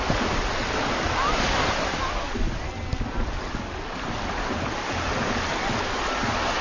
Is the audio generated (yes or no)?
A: no